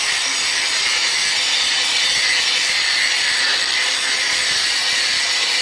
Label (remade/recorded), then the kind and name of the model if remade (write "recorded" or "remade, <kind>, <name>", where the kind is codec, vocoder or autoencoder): remade, vocoder, BigVGAN v2